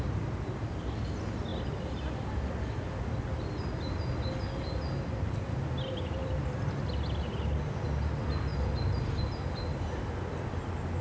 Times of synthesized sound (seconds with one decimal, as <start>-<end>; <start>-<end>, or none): 1.5-5.3; 9.7-10.5